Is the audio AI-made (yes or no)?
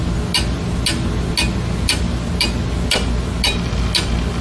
no